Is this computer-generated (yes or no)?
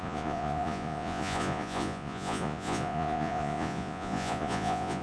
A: yes